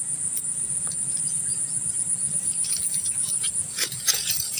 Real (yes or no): no